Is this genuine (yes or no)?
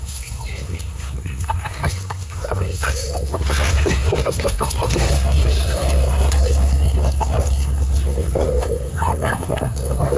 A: no